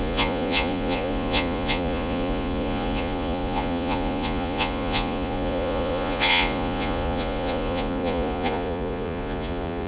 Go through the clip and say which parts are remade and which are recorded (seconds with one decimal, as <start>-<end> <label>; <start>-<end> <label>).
0.0-9.9 remade